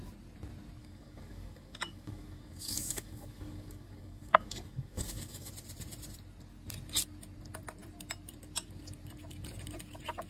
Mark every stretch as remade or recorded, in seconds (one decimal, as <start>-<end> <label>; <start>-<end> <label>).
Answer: 0.0-0.8 recorded; 0.8-5.5 remade; 5.5-10.3 recorded